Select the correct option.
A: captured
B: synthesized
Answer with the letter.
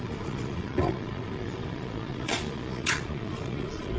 B